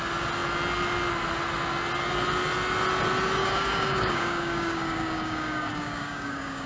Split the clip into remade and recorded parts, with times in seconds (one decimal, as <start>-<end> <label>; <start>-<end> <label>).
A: 0.0-3.4 recorded; 3.4-6.7 remade